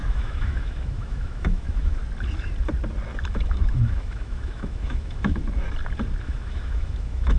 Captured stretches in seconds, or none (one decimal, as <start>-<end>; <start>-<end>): 2.0-3.3; 5.4-6.2